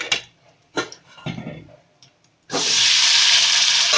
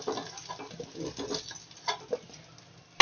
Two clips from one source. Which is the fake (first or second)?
first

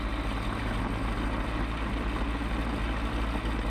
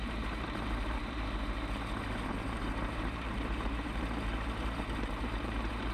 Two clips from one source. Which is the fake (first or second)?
second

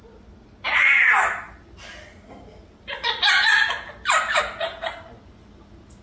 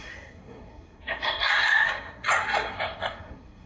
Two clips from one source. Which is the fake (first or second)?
second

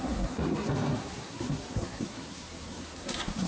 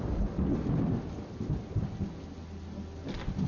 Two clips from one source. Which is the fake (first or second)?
first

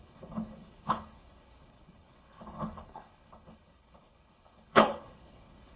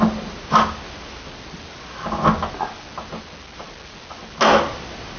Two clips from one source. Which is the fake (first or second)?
first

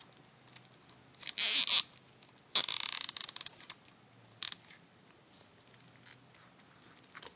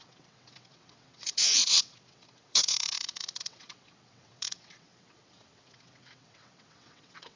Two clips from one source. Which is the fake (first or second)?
second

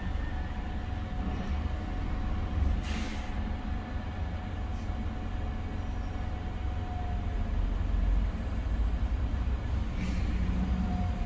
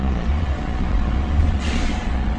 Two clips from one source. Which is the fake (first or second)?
second